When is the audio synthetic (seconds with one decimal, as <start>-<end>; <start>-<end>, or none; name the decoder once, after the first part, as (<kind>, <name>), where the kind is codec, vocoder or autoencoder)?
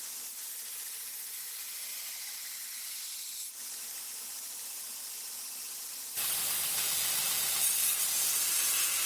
0.0-6.7 (vocoder, BigVGAN v2); 7.4-9.1